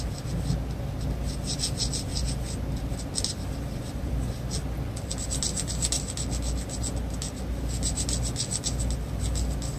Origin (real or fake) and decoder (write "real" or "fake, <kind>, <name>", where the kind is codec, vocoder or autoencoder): real